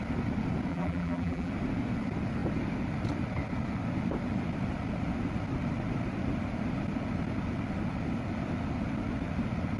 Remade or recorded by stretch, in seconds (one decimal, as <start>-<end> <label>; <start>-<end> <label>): 0.0-0.7 recorded; 0.7-1.5 remade; 1.5-9.8 recorded